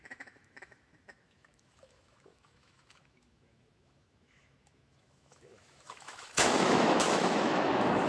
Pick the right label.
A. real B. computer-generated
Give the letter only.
B